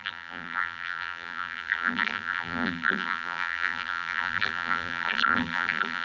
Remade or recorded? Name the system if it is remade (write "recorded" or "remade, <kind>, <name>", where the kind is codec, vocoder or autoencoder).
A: remade, vocoder, BigVGAN v2